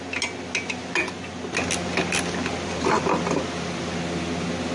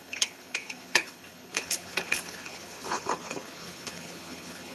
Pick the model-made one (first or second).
second